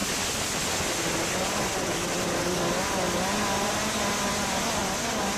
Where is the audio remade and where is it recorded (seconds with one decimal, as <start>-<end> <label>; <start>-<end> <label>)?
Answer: 0.0-1.7 recorded; 1.7-2.5 remade; 2.5-4.8 recorded; 4.8-5.4 remade